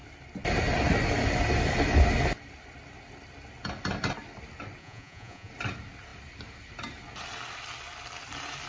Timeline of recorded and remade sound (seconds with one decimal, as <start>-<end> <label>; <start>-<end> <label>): 0.0-4.8 recorded; 4.8-5.5 remade; 5.5-8.7 recorded